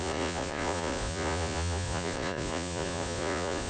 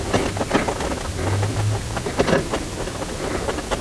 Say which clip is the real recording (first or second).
second